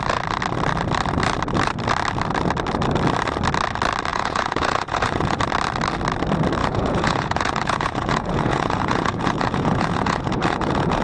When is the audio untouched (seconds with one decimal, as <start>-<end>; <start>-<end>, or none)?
0.0-4.1; 5.4-6.6